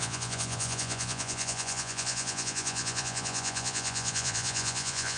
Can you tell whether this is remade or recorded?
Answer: remade